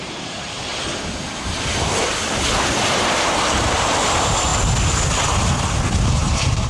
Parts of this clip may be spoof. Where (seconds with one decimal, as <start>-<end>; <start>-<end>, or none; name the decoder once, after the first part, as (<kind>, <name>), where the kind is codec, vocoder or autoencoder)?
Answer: 0.0-0.7 (vocoder, BigVGAN v2); 2.7-4.5; 5.9-6.7